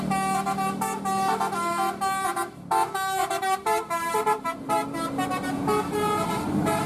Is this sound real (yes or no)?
yes